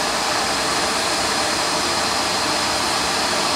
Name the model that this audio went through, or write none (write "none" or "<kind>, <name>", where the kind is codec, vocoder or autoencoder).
none